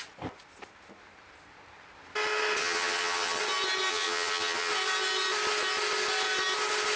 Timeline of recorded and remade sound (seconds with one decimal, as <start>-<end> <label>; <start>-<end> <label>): 0.0-2.6 recorded; 2.6-3.4 remade; 3.4-3.9 recorded; 3.9-4.7 remade; 4.7-7.0 recorded